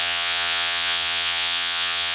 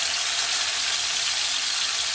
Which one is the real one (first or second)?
second